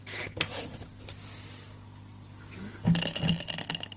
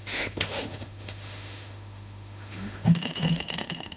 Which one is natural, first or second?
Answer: first